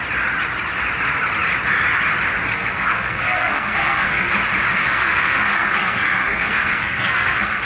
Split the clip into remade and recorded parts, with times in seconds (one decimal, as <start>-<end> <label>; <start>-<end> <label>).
0.0-2.5 recorded; 2.5-4.3 remade; 4.3-4.8 recorded; 4.8-7.6 remade